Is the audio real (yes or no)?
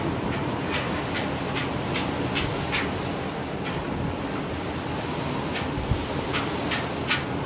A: yes